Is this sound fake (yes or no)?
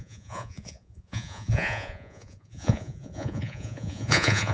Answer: yes